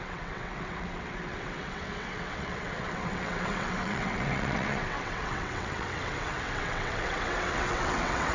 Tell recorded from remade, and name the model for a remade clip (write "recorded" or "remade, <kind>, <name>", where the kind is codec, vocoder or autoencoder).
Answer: remade, vocoder, WaveNeXt